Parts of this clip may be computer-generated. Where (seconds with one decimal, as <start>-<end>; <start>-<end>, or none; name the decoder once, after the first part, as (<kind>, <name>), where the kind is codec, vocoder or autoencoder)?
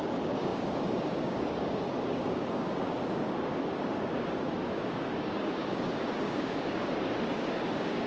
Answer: 0.0-8.1 (codec, DAC)